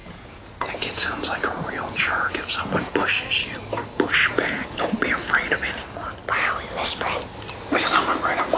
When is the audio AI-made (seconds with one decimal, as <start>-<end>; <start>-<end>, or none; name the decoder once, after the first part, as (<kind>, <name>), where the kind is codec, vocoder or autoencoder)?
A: 0.0-2.9 (vocoder, Vocos); 4.2-4.8

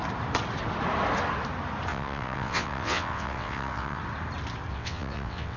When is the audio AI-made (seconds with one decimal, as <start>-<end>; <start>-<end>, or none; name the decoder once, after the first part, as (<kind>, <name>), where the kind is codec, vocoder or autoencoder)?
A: 1.9-4.0 (vocoder, WaveNeXt); 4.7-5.6